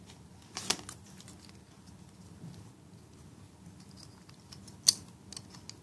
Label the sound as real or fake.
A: real